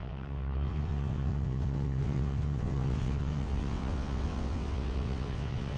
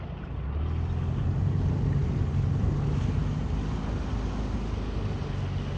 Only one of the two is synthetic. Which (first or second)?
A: first